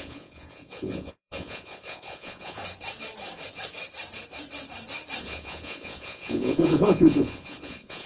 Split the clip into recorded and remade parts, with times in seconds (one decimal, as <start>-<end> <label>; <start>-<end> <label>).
0.0-2.6 remade; 2.6-5.2 recorded; 5.2-8.1 remade